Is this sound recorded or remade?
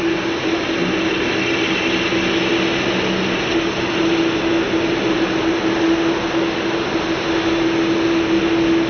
recorded